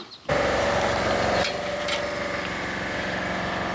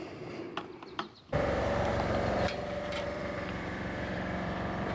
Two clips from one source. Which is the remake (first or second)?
second